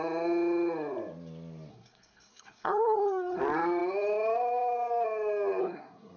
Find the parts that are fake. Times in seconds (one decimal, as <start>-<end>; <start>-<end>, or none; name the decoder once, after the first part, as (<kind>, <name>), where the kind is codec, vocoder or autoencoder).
1.7-3.4 (codec, SNAC); 5.6-6.2